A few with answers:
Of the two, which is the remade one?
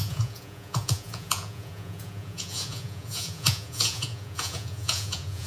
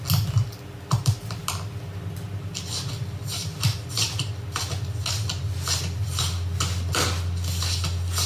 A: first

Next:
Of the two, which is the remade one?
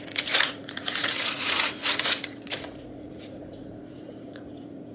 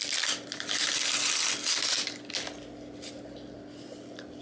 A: first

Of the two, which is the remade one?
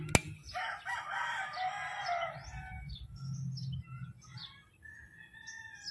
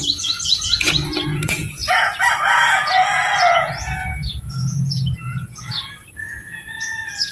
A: second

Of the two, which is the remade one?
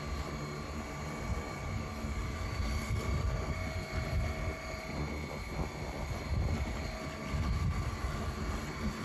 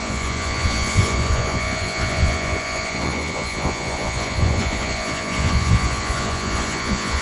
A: second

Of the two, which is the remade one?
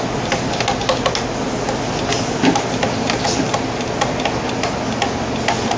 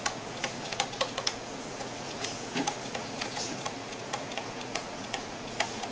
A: second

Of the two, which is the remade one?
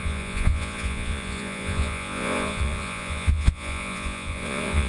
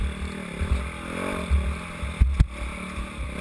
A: first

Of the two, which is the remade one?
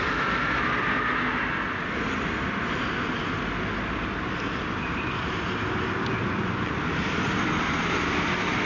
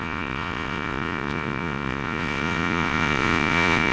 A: second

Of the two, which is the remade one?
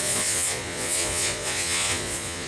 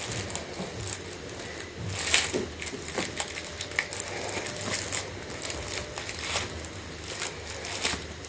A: first